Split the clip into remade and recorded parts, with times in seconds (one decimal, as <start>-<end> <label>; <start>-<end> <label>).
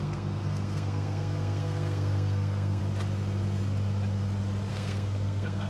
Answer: 0.0-2.8 remade; 2.8-4.7 recorded; 4.7-5.7 remade